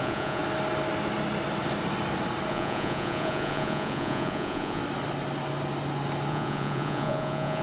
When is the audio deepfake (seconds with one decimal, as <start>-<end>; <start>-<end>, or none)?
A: 0.0-0.4; 2.5-4.8; 6.3-7.6